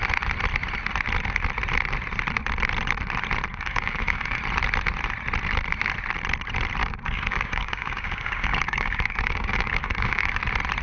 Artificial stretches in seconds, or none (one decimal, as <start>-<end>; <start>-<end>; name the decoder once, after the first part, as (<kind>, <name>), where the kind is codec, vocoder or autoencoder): 3.5-4.4 (codec, DAC); 6.8-10.4